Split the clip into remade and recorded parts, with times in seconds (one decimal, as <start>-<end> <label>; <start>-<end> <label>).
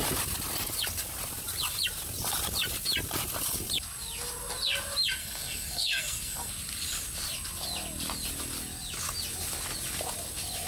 0.0-5.2 recorded; 5.2-6.5 remade; 6.5-10.7 recorded